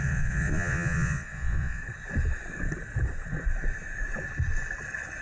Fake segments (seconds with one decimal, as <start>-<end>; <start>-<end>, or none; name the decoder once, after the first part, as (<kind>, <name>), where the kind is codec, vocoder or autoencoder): 0.0-1.8 (vocoder, Vocos)